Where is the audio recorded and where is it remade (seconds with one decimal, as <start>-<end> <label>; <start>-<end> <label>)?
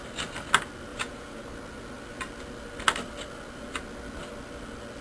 0.0-0.9 recorded; 0.9-1.4 remade; 1.4-5.0 recorded